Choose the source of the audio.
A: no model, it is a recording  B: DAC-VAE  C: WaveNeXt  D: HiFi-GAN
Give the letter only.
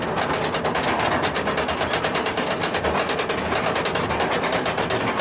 A